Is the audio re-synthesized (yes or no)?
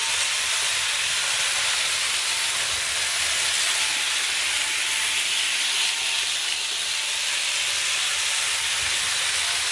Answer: no